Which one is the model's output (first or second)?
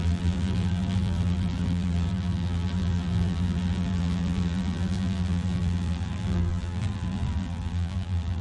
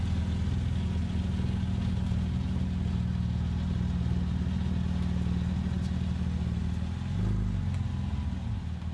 first